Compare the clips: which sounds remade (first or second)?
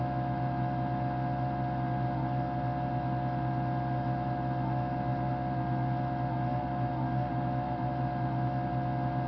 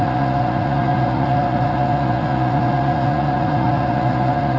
second